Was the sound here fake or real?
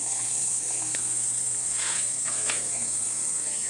fake